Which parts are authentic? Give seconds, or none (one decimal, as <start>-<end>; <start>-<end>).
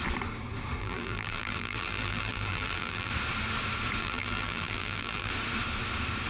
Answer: 0.0-0.8; 3.1-4.0; 5.3-6.3